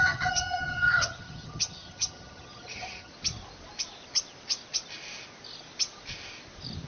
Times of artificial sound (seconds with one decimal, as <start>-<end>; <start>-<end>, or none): 0.0-3.1